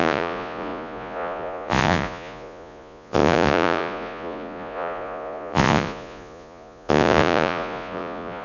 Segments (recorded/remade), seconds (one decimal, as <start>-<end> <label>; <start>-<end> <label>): 0.0-8.4 remade